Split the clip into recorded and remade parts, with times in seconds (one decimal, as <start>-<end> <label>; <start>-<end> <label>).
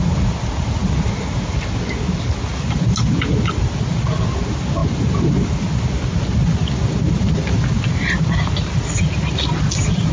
0.0-10.1 recorded